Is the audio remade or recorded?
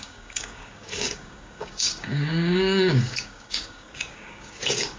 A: remade